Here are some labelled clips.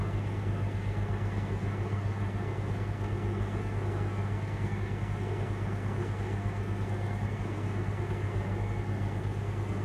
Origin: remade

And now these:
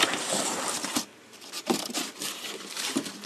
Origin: remade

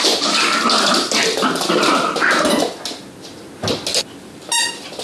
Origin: recorded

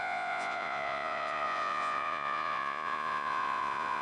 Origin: remade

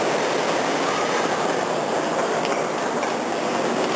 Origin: recorded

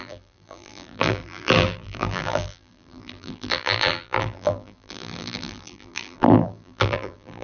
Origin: remade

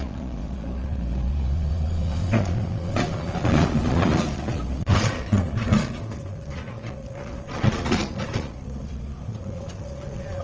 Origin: remade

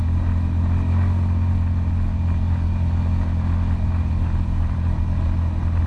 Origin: recorded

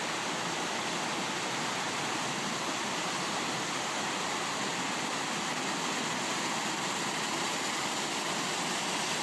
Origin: recorded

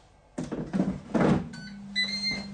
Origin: recorded